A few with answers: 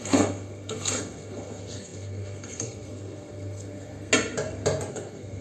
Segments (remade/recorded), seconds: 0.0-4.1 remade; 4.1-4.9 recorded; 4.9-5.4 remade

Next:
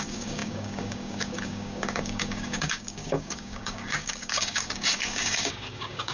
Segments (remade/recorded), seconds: 0.0-6.1 remade

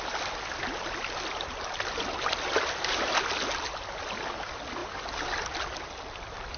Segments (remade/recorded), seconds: 0.0-6.6 recorded

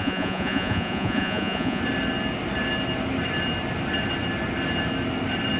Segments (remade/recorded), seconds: 0.0-1.8 remade; 1.8-5.6 recorded

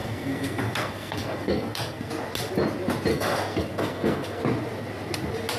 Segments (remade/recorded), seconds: 0.0-2.1 remade; 2.1-3.1 recorded; 3.1-4.4 remade; 4.4-5.6 recorded